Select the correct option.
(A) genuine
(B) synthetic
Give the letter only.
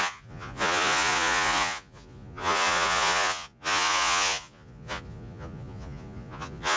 B